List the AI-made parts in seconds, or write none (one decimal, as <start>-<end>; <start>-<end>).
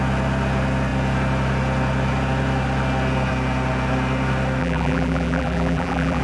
4.6-6.2